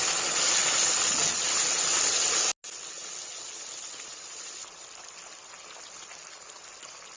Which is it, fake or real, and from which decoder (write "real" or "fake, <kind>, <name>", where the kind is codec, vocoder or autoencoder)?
real